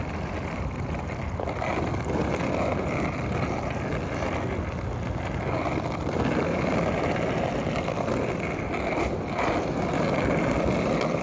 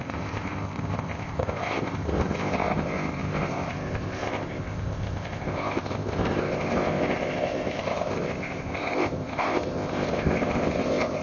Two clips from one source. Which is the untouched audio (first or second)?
first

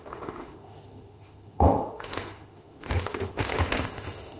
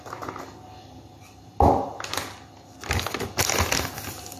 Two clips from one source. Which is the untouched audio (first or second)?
second